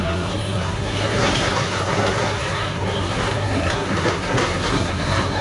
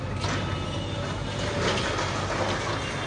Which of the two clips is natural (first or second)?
second